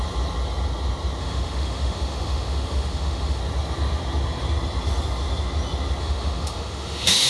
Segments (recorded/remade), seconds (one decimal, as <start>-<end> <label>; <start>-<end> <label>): 0.0-1.2 recorded; 1.2-3.4 remade; 3.4-6.0 recorded; 6.0-7.3 remade